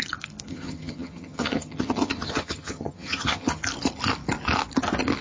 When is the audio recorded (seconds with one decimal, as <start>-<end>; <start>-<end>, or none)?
0.0-0.5; 3.6-5.2